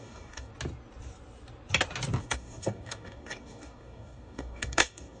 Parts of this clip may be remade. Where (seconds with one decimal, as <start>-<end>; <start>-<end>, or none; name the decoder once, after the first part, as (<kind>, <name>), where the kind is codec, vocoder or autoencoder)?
0.0-0.5 (codec, DAC); 2.2-5.2